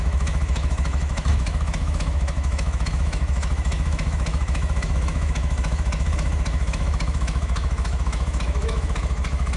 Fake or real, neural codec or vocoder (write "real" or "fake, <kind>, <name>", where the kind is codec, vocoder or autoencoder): fake, autoencoder, DAC-VAE